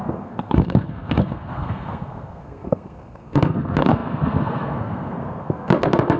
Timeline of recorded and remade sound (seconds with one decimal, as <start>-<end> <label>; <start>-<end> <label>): 0.0-6.2 remade